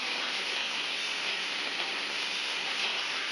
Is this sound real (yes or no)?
no